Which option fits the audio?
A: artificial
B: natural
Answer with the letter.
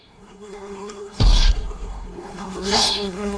A